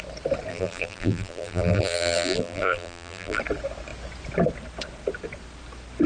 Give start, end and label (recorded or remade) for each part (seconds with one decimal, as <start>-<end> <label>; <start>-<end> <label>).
0.0-0.5 recorded; 0.5-3.4 remade; 3.4-6.1 recorded